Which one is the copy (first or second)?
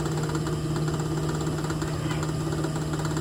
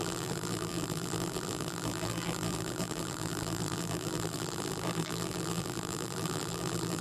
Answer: second